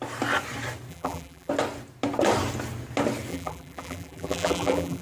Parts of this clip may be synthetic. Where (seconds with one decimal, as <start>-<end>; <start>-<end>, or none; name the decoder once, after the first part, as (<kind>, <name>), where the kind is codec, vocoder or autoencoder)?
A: 0.9-1.5 (vocoder, BigVGAN v2); 3.3-5.0